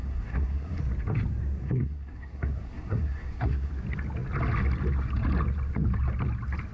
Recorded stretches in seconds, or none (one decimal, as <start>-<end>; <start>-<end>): 0.8-1.6; 3.7-6.7